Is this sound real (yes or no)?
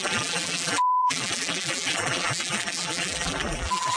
no